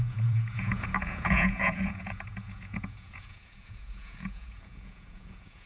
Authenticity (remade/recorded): remade